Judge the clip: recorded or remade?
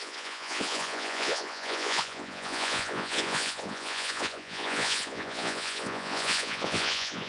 remade